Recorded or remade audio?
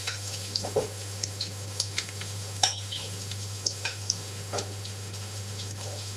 remade